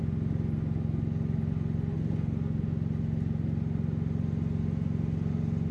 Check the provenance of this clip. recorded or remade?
recorded